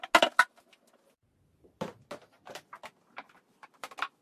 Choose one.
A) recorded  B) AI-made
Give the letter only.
A